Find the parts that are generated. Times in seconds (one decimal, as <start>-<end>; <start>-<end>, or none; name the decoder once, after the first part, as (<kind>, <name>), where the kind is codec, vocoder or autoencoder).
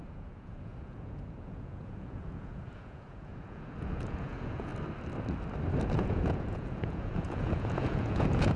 0.0-4.7 (vocoder, Vocos); 5.8-8.6